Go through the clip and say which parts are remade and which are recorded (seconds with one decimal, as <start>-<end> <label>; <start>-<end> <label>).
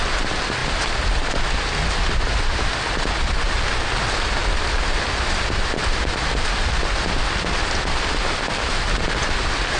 0.0-9.8 recorded